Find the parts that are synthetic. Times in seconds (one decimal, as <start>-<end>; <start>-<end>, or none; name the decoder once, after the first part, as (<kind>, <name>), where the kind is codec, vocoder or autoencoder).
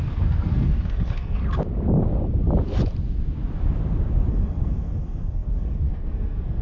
0.0-1.4 (codec, SNAC); 4.3-6.6